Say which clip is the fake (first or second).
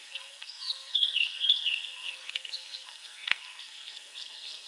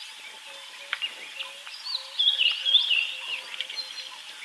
first